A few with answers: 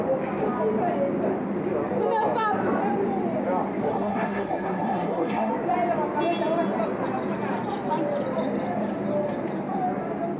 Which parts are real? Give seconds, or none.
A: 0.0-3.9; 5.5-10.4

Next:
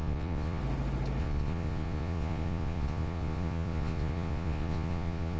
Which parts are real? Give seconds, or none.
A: 0.6-1.2

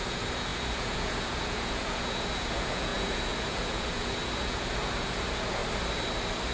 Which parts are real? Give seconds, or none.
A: 5.6-6.5